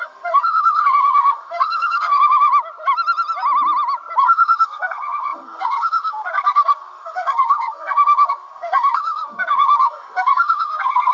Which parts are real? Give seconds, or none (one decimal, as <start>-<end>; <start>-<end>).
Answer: 2.5-4.2